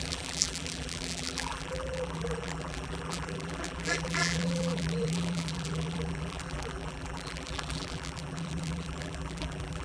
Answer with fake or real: fake